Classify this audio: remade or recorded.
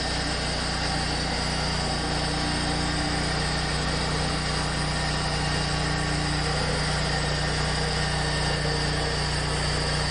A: recorded